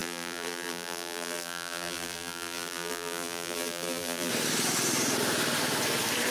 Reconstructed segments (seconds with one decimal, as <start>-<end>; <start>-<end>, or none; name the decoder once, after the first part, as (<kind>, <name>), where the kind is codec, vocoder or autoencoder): 0.0-4.3 (vocoder, BigVGAN v2)